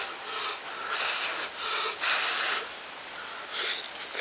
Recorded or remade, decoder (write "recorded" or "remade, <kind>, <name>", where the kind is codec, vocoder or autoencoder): recorded